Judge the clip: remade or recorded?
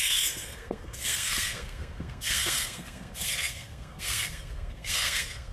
remade